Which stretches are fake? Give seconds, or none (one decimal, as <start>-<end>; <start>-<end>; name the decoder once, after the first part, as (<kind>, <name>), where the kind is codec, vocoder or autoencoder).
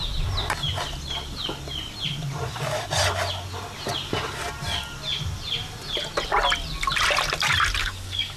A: 7.8-8.4 (codec, DAC)